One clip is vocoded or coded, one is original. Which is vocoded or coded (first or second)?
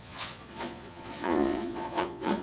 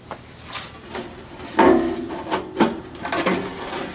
first